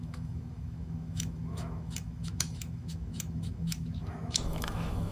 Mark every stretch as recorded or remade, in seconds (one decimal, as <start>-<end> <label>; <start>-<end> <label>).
0.0-5.1 remade

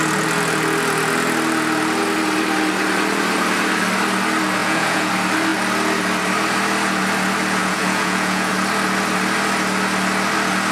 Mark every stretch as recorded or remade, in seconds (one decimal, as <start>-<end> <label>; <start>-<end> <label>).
0.0-4.6 recorded; 4.6-5.1 remade; 5.1-7.6 recorded; 7.6-8.5 remade; 8.5-10.7 recorded

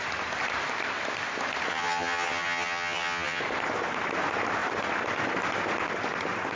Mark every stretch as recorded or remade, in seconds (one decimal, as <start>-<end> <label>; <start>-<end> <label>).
0.0-1.7 recorded; 1.7-3.4 remade; 3.4-6.6 recorded